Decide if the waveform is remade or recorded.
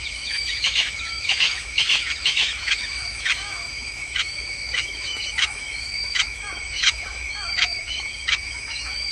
remade